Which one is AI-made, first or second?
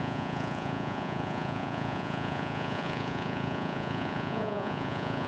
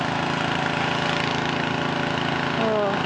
first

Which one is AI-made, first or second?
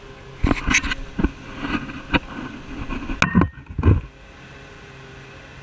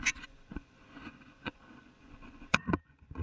second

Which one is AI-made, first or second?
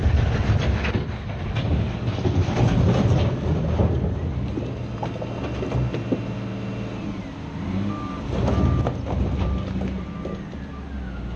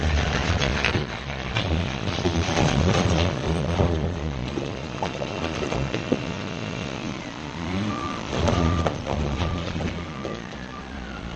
second